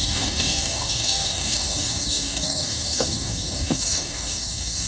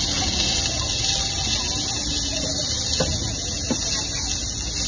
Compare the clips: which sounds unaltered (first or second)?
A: second